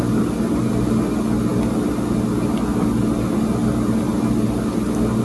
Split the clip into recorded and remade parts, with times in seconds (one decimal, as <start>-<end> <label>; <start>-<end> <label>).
0.0-5.2 recorded